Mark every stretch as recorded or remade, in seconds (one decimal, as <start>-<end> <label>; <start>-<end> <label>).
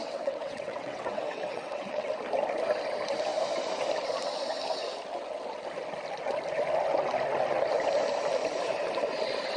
0.0-2.1 remade; 2.1-9.6 recorded